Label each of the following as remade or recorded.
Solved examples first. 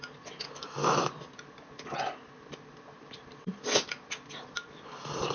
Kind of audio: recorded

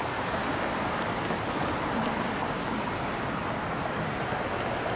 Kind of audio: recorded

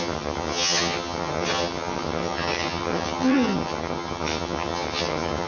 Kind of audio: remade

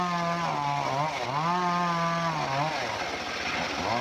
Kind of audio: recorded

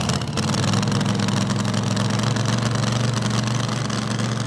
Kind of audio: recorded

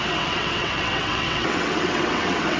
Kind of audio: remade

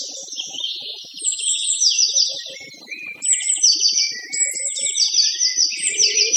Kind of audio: remade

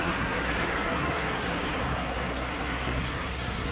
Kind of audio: remade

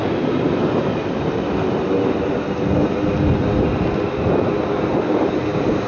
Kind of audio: recorded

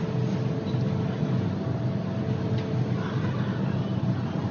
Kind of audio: recorded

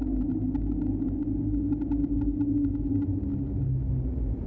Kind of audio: recorded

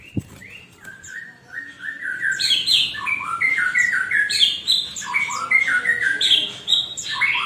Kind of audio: remade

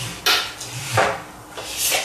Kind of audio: recorded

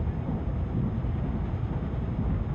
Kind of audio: recorded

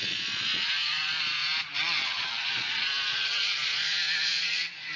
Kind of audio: remade